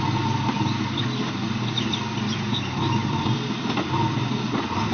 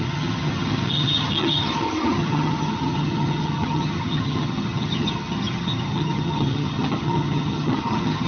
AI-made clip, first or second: second